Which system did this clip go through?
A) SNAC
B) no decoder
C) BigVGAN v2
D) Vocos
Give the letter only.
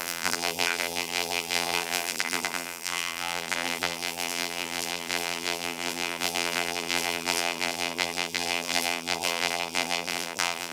C